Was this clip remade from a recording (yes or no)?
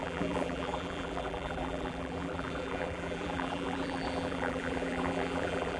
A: yes